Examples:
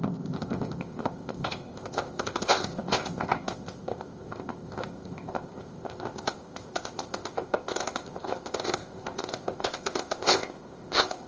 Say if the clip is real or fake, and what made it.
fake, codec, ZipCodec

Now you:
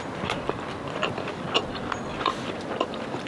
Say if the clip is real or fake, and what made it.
real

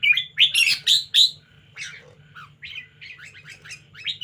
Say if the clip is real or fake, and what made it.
real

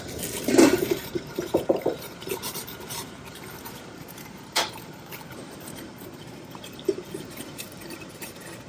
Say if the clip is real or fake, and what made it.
fake, vocoder, BigVGAN v2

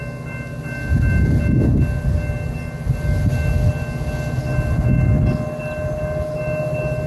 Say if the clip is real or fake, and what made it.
real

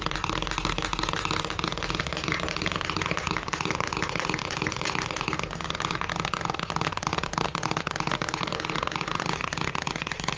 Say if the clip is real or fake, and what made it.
real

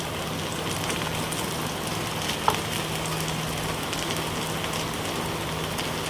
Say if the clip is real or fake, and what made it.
real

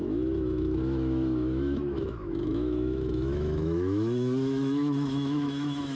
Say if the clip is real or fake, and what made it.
fake, autoencoder, DAC-VAE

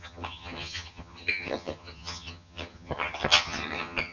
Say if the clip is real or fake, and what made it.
fake, vocoder, HiFi-GAN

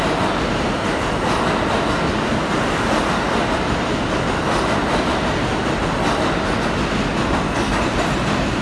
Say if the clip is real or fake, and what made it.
real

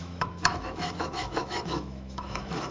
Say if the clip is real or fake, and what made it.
fake, autoencoder, DAC-VAE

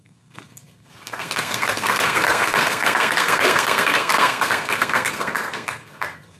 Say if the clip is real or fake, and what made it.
fake, codec, SNAC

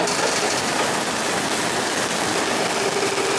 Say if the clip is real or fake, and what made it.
real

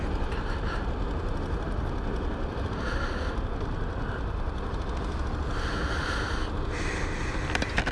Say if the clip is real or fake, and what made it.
real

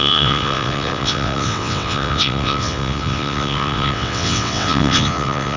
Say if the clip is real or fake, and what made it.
fake, vocoder, WaveNeXt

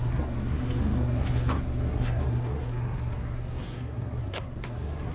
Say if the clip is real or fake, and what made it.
fake, codec, SNAC